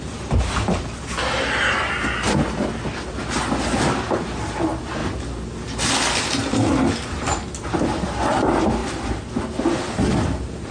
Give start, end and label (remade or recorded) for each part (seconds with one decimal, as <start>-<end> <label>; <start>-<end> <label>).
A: 0.0-10.7 recorded